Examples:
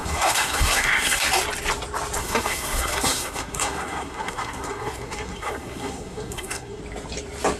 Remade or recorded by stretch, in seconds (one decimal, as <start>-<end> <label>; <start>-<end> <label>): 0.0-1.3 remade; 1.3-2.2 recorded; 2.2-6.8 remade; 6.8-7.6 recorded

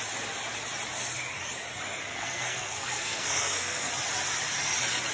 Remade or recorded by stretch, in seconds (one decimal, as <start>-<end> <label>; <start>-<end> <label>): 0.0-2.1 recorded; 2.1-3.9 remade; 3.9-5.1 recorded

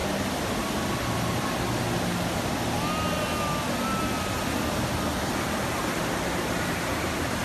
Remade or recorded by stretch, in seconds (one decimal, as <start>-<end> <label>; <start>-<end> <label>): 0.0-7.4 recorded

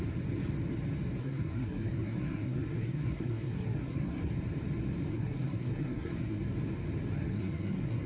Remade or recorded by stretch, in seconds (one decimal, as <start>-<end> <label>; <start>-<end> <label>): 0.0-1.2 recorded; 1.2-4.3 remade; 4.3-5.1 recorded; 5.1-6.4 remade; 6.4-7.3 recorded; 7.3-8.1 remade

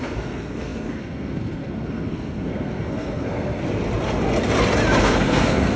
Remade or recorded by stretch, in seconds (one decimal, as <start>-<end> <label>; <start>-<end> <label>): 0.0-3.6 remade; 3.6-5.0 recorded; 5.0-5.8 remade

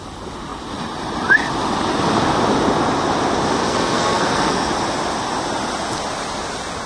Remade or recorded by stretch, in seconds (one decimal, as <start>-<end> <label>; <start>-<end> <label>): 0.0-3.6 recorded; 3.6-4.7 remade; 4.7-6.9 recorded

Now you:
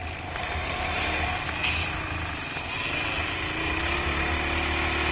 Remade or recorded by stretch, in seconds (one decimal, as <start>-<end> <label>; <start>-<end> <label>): 0.0-5.1 recorded